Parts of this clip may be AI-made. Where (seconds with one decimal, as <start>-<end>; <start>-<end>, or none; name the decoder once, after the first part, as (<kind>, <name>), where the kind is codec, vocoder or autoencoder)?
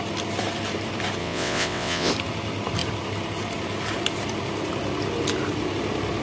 1.2-2.1 (vocoder, WaveNeXt)